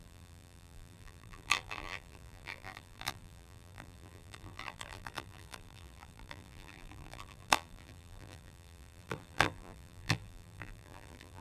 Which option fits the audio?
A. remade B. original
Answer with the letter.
A